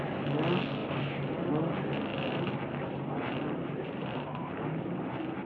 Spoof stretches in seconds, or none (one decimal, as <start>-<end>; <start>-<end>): 0.8-1.5; 2.1-5.5